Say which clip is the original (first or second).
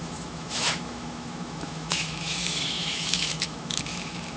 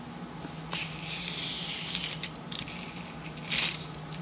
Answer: second